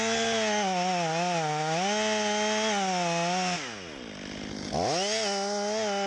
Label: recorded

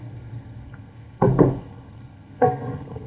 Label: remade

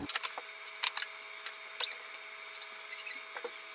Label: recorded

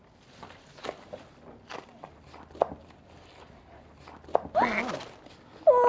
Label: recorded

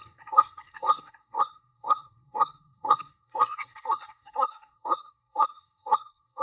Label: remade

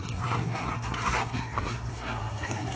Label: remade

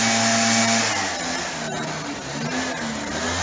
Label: recorded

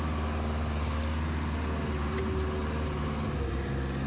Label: recorded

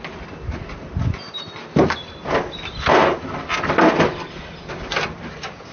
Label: recorded